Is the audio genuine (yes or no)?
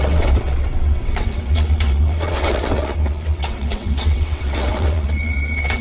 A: no